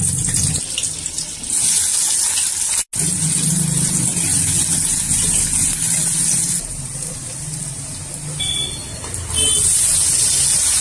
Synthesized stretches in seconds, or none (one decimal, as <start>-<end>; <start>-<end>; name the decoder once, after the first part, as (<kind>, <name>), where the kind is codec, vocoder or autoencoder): 6.7-7.3 (vocoder, BigVGAN v2)